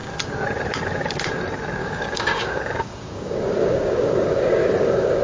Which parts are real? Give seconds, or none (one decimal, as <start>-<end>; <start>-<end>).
0.0-1.8